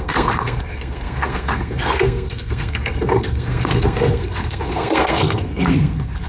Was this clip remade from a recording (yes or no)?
yes